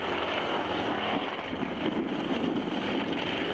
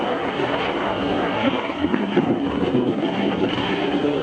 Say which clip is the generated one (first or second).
second